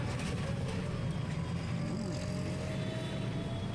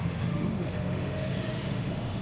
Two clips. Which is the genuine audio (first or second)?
first